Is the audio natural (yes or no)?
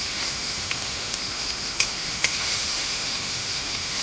no